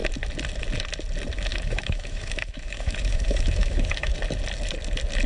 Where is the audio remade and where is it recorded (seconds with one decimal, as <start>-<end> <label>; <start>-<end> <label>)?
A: 0.0-1.5 recorded; 1.5-4.1 remade; 4.1-5.3 recorded